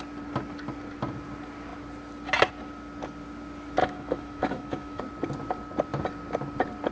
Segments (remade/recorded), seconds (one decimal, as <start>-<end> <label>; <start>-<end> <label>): 0.0-3.8 recorded; 3.8-5.0 remade; 5.0-6.9 recorded